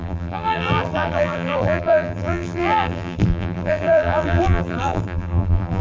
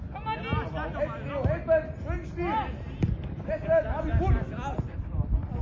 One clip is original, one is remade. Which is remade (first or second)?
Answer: first